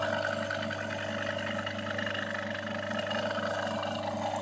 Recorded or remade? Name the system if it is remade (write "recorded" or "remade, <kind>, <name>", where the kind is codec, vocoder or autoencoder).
recorded